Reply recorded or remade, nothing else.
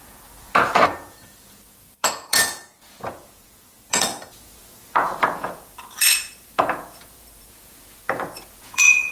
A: remade